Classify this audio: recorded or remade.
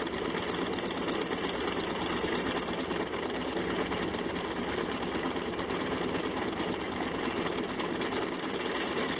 recorded